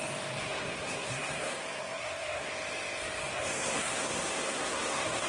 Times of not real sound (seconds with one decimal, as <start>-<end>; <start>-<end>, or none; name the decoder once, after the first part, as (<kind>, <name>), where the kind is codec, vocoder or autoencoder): 0.4-2.5 (codec, SNAC); 3.3-5.3